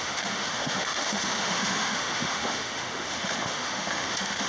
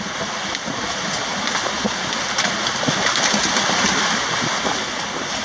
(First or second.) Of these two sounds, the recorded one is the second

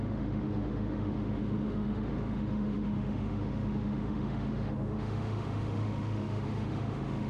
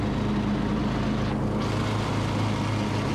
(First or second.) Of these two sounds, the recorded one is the second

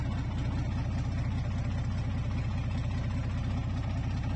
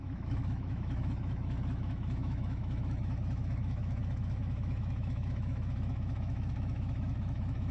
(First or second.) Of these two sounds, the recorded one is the first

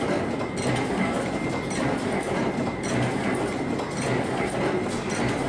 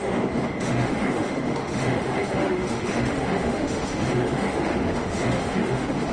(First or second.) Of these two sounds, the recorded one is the first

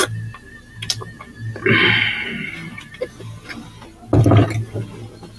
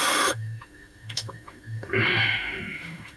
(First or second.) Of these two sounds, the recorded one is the first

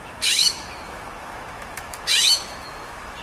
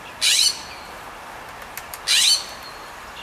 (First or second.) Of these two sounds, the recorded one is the second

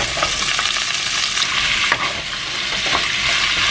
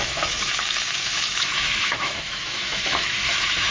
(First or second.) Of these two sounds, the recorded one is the first